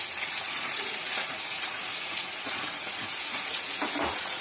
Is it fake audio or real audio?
fake